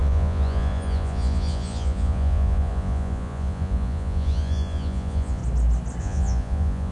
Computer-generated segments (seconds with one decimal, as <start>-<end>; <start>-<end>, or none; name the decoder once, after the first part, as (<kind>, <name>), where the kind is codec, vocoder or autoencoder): 0.0-5.4 (vocoder, Vocos); 6.0-6.9